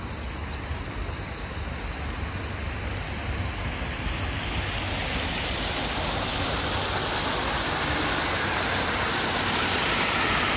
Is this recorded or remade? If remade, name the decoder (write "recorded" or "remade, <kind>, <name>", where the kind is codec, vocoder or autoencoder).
recorded